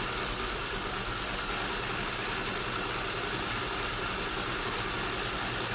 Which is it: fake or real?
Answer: real